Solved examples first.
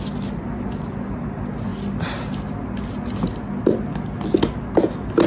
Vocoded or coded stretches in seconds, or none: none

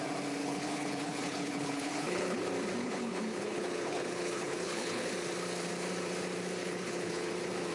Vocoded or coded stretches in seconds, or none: 0.4-2.4 (codec, HILCodec); 2.8-5.1; 6.6-7.3

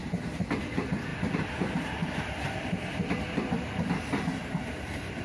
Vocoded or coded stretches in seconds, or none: none

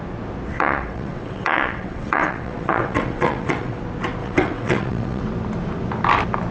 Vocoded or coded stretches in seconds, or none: 0.5-3.8 (vocoder, WaveNeXt); 4.2-5.2

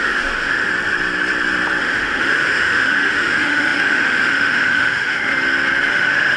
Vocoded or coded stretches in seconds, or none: 0.0-0.7 (autoencoder, DAC-VAE); 1.8-5.3; 5.9-6.4

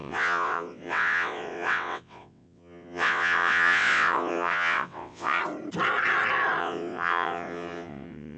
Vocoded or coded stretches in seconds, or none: 0.0-5.4 (vocoder, WaveNeXt); 6.6-8.4